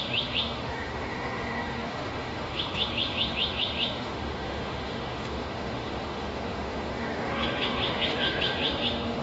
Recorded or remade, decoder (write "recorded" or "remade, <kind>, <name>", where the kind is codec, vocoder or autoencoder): remade, autoencoder, DAC-VAE